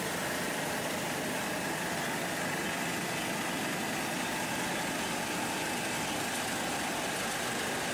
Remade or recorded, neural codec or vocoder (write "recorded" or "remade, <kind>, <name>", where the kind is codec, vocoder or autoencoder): recorded